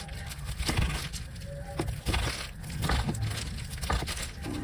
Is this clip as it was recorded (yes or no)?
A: yes